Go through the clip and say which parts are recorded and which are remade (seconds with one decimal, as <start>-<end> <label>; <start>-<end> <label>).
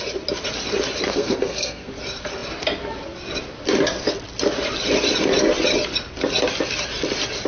0.0-1.1 recorded; 1.1-1.9 remade; 1.9-7.5 recorded